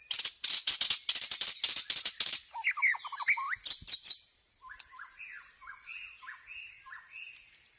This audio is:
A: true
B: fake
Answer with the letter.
A